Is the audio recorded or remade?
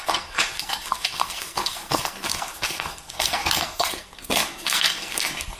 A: remade